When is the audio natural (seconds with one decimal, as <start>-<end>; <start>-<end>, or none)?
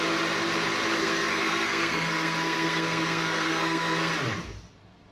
0.0-1.0; 4.1-5.1